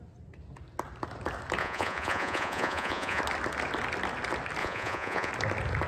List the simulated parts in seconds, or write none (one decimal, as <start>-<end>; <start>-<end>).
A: 1.6-3.2; 4.6-5.3